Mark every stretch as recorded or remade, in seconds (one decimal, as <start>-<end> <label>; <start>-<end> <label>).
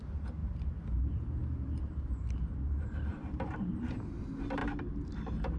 0.0-0.4 recorded; 0.4-3.8 remade; 3.8-5.6 recorded